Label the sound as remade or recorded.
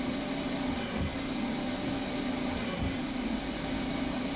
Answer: recorded